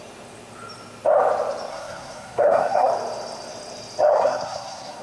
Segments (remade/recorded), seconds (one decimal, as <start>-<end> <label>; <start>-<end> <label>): 0.0-1.7 recorded; 1.7-2.9 remade; 2.9-4.1 recorded; 4.1-5.0 remade

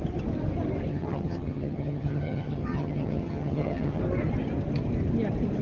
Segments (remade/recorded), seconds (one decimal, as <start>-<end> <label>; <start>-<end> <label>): 0.0-0.9 recorded; 0.9-4.0 remade; 4.0-5.6 recorded